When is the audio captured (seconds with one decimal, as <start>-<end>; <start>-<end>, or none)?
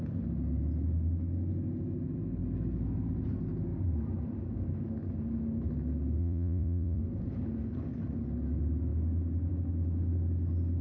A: 0.0-6.2; 7.0-10.8